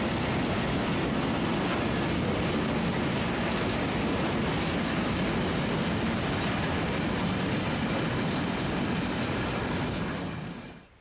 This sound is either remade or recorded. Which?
recorded